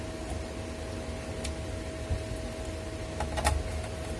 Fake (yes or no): no